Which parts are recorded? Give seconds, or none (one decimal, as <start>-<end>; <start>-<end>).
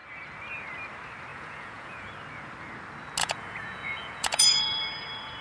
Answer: 0.0-1.3; 2.1-3.2; 4.6-5.4